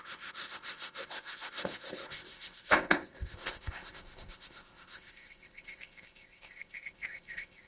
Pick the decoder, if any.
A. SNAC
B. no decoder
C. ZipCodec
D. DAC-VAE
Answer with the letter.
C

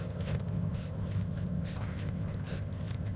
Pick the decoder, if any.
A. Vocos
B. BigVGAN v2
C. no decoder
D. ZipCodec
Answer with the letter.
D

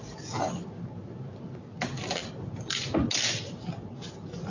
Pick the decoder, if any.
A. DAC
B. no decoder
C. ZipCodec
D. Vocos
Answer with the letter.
B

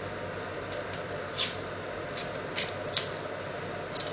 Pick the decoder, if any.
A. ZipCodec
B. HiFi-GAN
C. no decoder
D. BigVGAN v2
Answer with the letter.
C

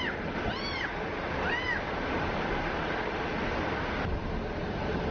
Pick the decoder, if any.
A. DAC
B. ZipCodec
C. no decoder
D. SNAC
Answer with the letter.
C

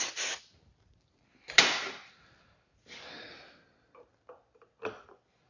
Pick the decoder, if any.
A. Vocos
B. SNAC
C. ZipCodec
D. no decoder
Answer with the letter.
D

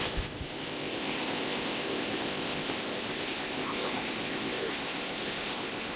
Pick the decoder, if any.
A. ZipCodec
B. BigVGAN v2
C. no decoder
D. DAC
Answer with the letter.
A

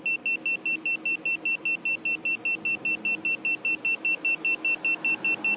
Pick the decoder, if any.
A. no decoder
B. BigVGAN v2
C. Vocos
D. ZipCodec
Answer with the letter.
A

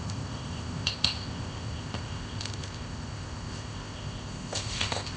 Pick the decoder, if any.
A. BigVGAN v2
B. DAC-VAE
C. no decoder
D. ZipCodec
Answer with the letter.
D